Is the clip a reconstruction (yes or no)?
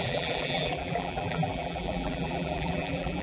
yes